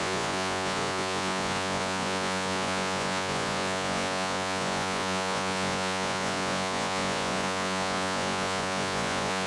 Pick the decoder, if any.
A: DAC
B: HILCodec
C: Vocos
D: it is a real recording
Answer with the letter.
C